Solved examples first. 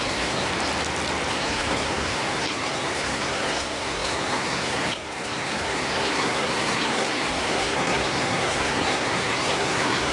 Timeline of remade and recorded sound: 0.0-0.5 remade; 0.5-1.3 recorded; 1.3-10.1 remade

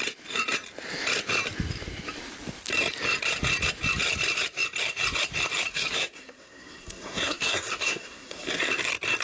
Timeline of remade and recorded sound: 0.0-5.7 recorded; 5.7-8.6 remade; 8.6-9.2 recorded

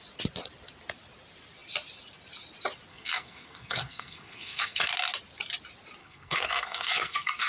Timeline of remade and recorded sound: 0.0-2.9 recorded; 2.9-4.8 remade; 4.8-6.0 recorded; 6.0-7.5 remade

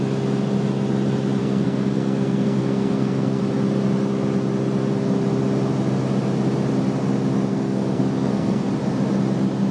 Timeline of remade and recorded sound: 0.0-1.4 recorded; 1.4-3.4 remade; 3.4-7.5 recorded; 7.5-8.7 remade; 8.7-9.7 recorded

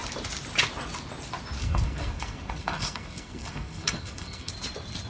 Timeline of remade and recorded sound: 0.0-1.6 recorded; 1.6-4.5 remade; 4.5-5.1 recorded

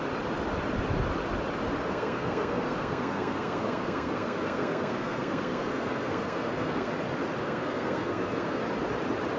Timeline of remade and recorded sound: 0.0-1.8 recorded; 1.8-6.9 remade; 6.9-7.4 recorded; 7.4-8.6 remade; 8.6-9.4 recorded

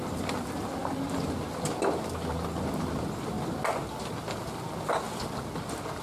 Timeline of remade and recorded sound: 0.0-6.0 recorded

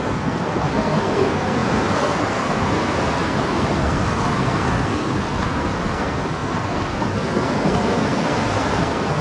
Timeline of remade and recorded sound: 0.0-9.2 remade